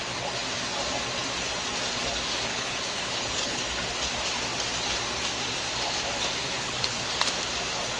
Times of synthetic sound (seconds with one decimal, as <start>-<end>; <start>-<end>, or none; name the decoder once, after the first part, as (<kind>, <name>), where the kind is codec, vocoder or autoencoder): 2.5-3.6 (codec, HILCodec); 6.4-7.1